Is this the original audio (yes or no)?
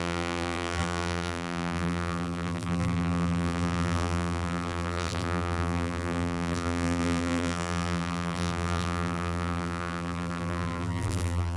no